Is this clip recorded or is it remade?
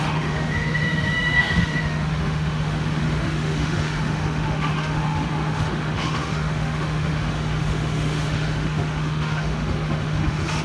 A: remade